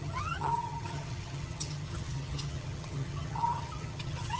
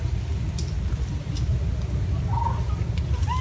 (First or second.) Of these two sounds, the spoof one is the first